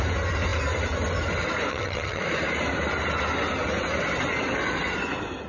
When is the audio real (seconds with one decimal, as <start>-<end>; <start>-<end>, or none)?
0.0-1.7; 2.2-5.5